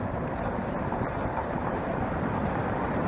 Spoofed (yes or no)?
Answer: yes